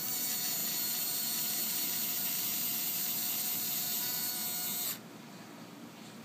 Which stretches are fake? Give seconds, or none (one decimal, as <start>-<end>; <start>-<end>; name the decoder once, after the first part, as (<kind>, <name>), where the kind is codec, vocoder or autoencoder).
0.6-4.3 (vocoder, BigVGAN v2)